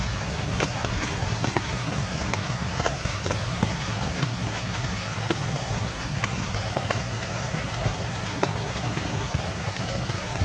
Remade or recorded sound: remade